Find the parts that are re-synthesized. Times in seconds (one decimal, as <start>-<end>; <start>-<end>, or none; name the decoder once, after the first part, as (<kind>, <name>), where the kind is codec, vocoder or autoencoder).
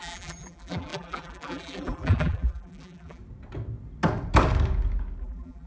0.0-3.2 (vocoder, BigVGAN v2); 5.2-5.7